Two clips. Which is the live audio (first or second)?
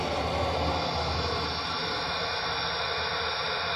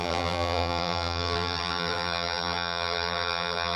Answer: first